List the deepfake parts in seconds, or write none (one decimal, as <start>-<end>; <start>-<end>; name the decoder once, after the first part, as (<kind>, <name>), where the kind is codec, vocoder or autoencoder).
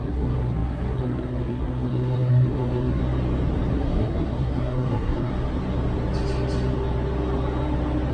0.0-3.0 (codec, SNAC); 3.7-5.3